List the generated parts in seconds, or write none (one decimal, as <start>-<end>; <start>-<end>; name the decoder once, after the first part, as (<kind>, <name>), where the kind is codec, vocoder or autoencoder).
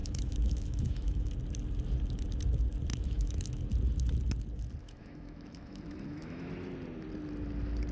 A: 0.0-1.3 (autoencoder, DAC-VAE); 2.9-3.6; 4.8-6.5